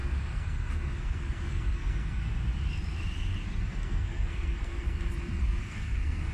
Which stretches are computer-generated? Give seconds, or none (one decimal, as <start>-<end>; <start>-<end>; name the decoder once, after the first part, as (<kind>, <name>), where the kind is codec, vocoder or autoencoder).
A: 0.0-2.3 (codec, SNAC); 3.6-6.3